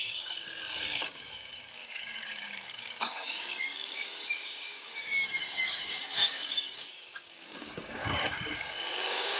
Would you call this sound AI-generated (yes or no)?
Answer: yes